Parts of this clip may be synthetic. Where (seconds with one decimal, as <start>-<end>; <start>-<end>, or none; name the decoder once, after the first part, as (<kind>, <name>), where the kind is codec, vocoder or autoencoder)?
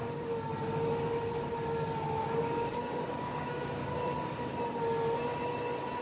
0.0-0.5 (codec, DAC); 2.2-3.8